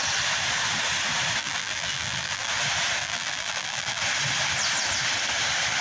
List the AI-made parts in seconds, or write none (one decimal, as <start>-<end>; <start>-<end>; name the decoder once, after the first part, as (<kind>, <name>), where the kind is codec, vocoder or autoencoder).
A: 1.4-2.5 (vocoder, BigVGAN v2); 3.0-4.0